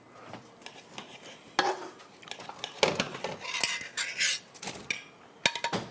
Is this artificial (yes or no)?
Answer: no